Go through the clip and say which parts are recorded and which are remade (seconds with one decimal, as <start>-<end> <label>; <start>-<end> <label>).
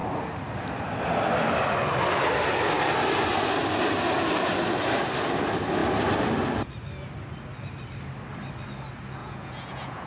0.0-9.2 recorded; 9.2-10.1 remade